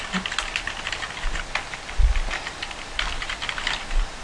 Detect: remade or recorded recorded